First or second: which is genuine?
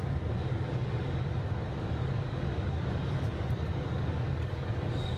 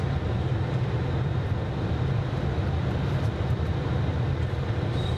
second